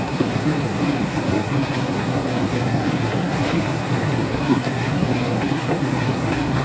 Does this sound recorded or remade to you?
remade